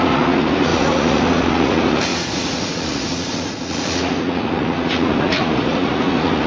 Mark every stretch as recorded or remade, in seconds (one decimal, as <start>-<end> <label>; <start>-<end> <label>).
0.0-6.5 remade